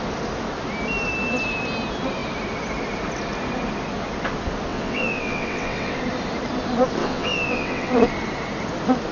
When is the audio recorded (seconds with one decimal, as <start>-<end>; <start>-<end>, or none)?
0.0-4.7; 6.0-7.0; 7.9-9.1